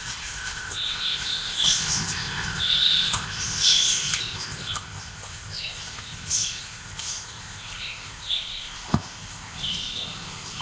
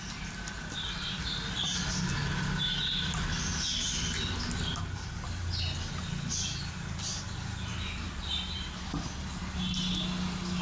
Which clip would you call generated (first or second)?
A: first